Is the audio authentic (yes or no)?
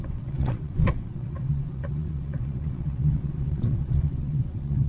no